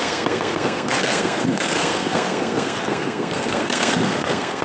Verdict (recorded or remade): remade